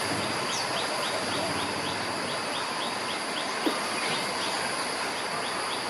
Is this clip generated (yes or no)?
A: no